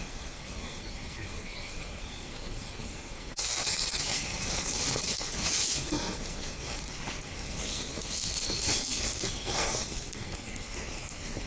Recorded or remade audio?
remade